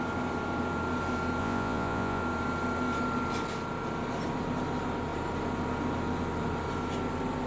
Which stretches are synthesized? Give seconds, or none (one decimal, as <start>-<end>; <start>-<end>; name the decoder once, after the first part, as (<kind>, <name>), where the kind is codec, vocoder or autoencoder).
1.4-2.2 (vocoder, Vocos)